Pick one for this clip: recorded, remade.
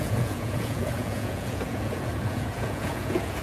remade